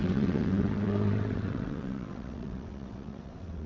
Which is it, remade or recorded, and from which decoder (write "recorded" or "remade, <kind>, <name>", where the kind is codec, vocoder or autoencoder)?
remade, vocoder, WaveNeXt